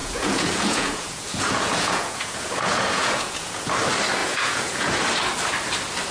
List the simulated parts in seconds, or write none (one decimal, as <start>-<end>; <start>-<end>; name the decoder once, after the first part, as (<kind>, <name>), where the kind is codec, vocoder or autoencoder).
0.0-3.7 (vocoder, Vocos); 4.2-4.9